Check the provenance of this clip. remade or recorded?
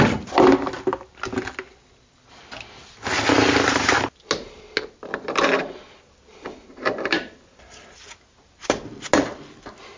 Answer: recorded